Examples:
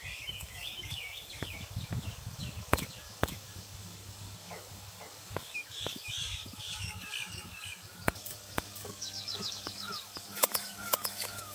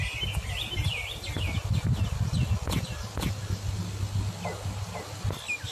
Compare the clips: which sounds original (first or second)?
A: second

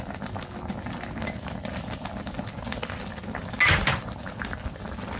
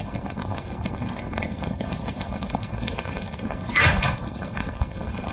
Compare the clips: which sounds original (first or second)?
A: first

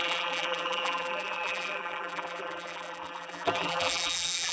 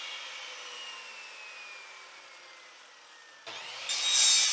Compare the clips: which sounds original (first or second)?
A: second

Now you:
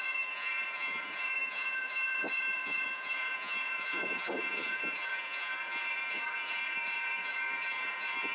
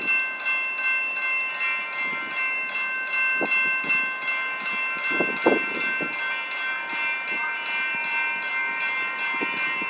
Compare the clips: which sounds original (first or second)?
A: second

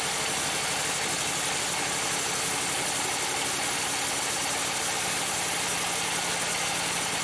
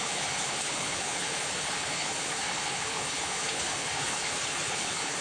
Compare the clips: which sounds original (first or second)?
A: first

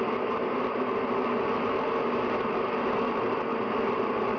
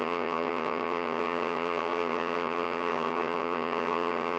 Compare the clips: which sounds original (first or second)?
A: first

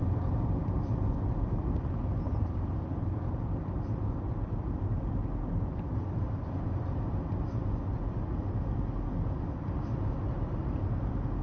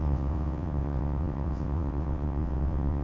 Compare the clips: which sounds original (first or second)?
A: first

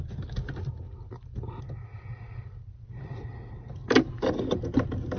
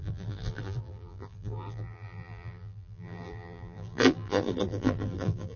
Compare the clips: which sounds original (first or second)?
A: first